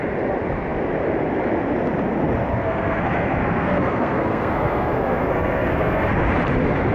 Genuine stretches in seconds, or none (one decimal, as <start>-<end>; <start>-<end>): 0.0-2.5; 6.1-6.9